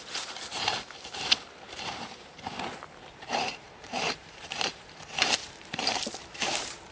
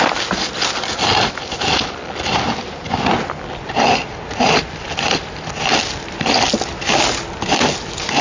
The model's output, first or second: first